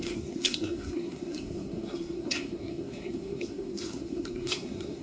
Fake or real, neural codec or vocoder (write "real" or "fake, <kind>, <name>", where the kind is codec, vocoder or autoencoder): fake, codec, SNAC